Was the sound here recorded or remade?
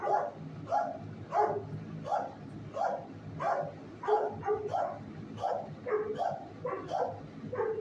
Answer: recorded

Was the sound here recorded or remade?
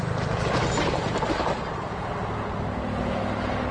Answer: recorded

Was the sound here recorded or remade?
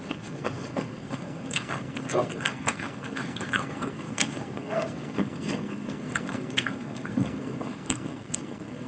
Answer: remade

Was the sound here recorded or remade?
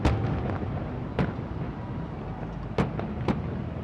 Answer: recorded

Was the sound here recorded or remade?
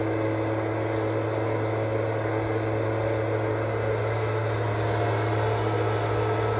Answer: recorded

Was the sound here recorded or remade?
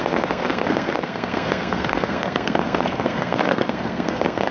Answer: remade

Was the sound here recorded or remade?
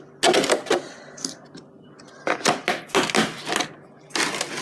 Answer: recorded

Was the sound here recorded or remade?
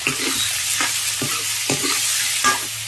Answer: recorded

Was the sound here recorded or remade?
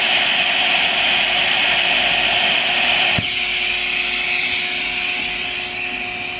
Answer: recorded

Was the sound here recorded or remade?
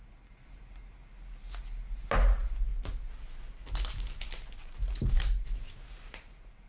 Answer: recorded